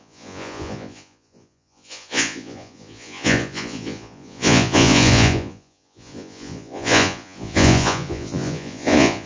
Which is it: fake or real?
fake